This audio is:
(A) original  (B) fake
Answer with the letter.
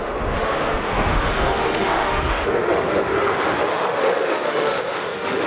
B